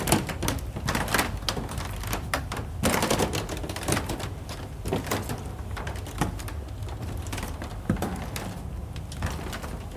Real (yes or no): yes